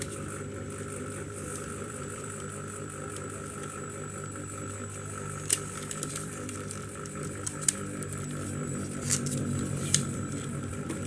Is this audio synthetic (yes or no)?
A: yes